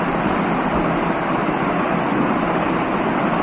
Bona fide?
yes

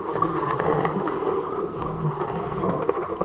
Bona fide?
no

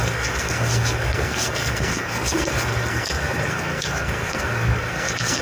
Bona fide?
no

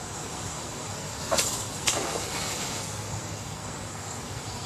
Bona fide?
no